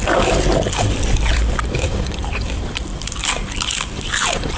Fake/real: fake